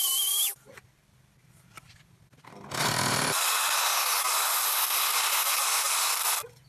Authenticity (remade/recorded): recorded